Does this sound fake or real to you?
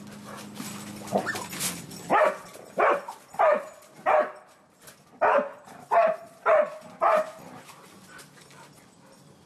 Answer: real